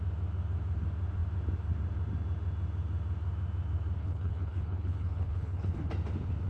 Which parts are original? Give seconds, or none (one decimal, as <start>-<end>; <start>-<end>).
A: 0.0-4.0; 5.9-6.5